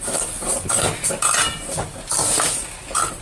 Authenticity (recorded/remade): recorded